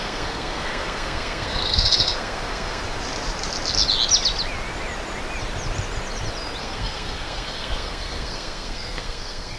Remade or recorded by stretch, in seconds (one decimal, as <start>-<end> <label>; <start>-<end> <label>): 0.0-2.8 remade; 2.8-6.6 recorded; 6.6-9.6 remade